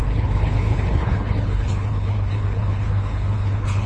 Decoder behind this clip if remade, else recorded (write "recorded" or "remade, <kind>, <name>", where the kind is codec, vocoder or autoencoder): remade, codec, HILCodec